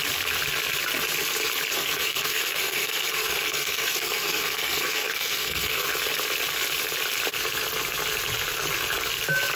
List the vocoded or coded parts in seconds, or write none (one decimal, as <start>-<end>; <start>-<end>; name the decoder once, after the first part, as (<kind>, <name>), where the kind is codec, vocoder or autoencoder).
1.7-5.9 (codec, SNAC)